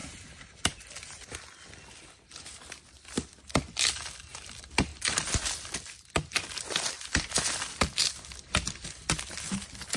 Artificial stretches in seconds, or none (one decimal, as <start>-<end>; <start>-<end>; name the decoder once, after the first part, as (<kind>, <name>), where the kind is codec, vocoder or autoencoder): none